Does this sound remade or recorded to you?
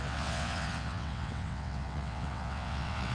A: remade